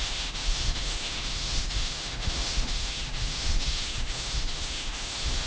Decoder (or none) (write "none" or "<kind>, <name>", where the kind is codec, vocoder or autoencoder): autoencoder, DAC-VAE